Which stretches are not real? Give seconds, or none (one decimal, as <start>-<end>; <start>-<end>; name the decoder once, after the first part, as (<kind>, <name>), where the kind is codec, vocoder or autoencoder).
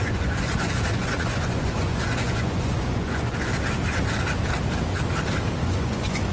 0.0-3.5 (vocoder, Vocos); 5.6-6.3